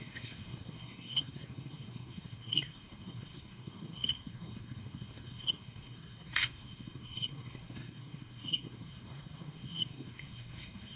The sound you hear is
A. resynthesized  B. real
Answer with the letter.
A